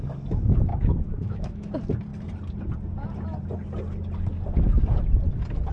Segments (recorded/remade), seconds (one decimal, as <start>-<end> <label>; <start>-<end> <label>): 0.0-0.7 recorded; 0.7-1.7 remade; 1.7-5.7 recorded